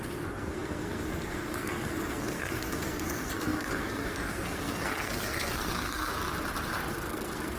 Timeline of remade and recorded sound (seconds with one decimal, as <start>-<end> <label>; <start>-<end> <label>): 0.0-6.1 remade; 6.1-6.9 recorded; 6.9-7.6 remade